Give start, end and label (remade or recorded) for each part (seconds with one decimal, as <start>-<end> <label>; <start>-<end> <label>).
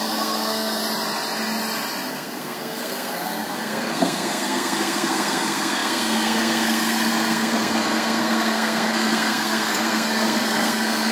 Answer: 0.0-0.8 remade; 0.8-2.1 recorded; 2.1-11.1 remade